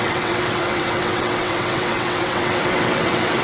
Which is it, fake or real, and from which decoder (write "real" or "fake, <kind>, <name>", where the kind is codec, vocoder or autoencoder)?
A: fake, vocoder, WaveNeXt